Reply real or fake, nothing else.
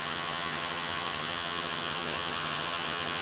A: fake